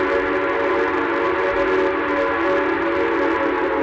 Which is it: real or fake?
real